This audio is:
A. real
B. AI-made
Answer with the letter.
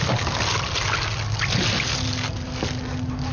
A